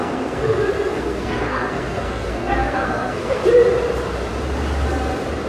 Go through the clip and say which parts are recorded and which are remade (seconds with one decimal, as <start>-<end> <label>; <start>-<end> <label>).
0.0-3.4 remade; 3.4-5.5 recorded